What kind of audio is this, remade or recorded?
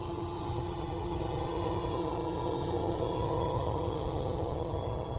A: remade